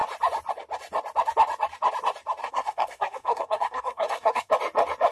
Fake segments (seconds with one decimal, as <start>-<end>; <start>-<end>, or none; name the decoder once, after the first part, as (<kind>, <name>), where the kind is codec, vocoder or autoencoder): 2.4-4.5 (codec, SNAC)